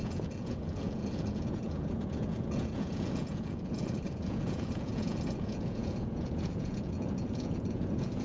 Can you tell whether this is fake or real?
fake